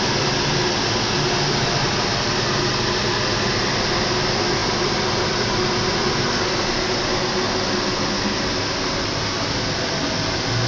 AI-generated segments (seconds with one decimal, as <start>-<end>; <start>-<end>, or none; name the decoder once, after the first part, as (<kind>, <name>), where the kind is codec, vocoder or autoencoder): none